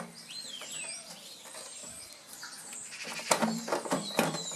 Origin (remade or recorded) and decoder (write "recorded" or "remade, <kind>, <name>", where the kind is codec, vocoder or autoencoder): recorded